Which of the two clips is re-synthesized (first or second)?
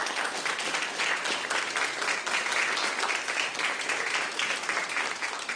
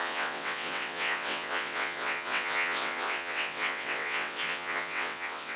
second